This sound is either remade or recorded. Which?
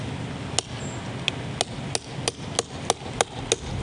recorded